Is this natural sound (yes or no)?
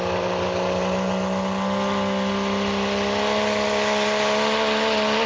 yes